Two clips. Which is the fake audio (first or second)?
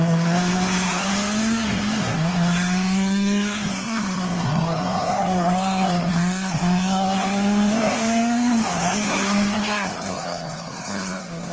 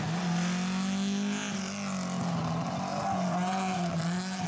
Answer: first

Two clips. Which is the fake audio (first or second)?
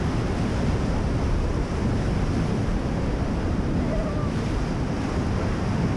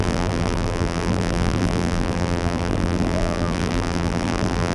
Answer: second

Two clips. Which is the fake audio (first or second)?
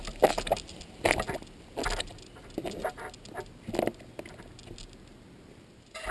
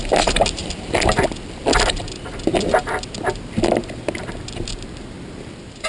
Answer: second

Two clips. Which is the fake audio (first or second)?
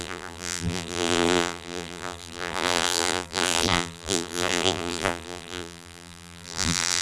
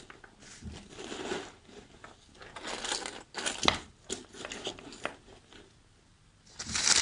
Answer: first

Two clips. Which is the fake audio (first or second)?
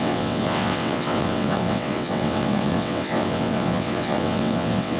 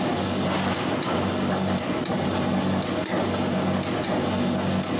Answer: first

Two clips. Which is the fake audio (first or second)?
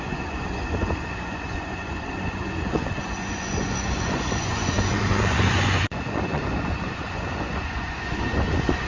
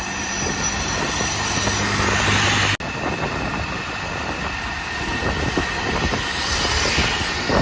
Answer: first